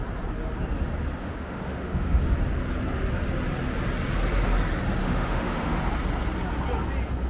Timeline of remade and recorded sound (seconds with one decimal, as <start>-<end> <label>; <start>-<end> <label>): 0.0-1.2 recorded; 1.2-2.2 remade; 2.2-5.0 recorded; 5.0-5.8 remade; 5.8-7.3 recorded